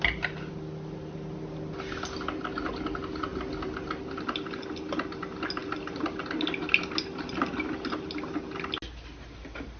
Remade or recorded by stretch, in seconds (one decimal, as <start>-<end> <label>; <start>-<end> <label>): 0.0-9.8 recorded